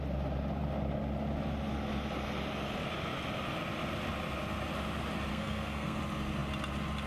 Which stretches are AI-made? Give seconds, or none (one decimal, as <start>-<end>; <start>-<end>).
5.3-6.0